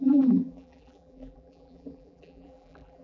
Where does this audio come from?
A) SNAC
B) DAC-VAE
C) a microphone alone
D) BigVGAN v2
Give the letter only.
D